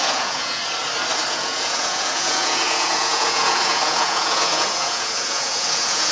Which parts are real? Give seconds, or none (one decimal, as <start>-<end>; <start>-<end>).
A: 0.6-1.3